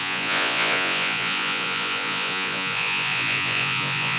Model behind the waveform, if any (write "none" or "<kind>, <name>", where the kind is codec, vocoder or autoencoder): vocoder, Vocos